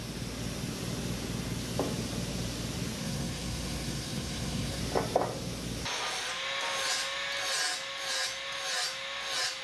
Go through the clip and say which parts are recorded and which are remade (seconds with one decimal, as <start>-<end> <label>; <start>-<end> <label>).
0.0-3.0 recorded; 3.0-4.8 remade; 4.8-9.6 recorded